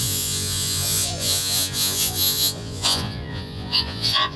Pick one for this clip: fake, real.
fake